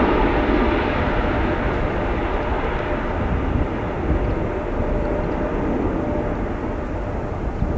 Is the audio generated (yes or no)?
no